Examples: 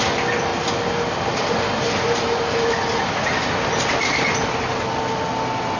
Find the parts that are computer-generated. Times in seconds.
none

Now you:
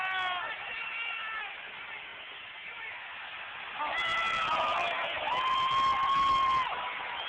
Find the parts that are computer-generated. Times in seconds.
2.1-3.6

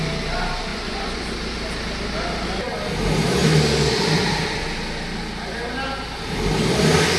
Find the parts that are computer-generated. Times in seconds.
0.7-1.2